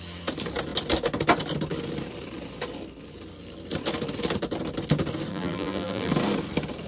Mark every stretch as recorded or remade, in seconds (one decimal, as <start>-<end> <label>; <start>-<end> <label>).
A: 0.0-5.3 recorded; 5.3-6.1 remade; 6.1-6.9 recorded